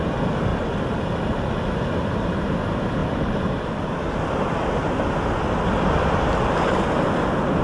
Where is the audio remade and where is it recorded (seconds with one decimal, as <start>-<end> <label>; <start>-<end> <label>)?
0.0-7.6 recorded